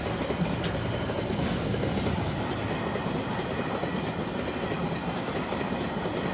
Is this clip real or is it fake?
real